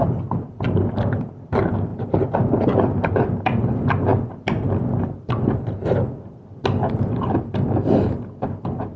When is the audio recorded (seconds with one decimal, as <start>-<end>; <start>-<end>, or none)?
0.0-9.0